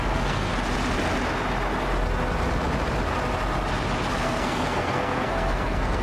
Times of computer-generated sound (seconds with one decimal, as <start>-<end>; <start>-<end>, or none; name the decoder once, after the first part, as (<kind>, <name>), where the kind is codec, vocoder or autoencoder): 0.0-0.5 (codec, SNAC); 4.1-6.0